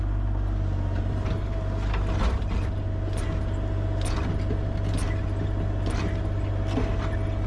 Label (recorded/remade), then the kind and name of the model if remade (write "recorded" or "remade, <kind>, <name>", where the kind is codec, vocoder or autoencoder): recorded